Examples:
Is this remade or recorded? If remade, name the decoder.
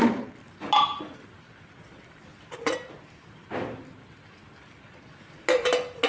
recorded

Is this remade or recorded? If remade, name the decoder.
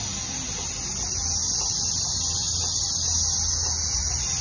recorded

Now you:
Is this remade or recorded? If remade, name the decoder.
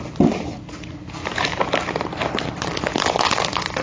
recorded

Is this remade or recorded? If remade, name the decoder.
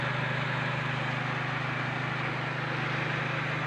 recorded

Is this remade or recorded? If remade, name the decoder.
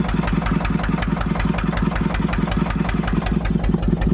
recorded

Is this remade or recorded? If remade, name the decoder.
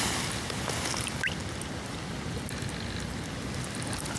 recorded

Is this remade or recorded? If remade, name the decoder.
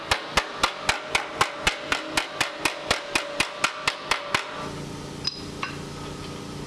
recorded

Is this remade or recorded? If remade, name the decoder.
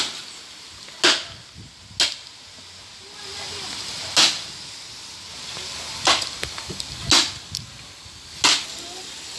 recorded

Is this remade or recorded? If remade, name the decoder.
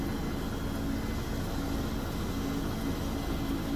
recorded